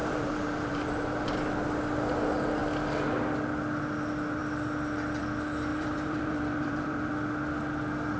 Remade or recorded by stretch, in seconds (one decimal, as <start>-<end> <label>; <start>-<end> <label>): 0.0-1.3 remade; 1.3-5.7 recorded; 5.7-7.1 remade; 7.1-8.2 recorded